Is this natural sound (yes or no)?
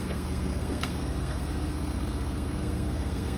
no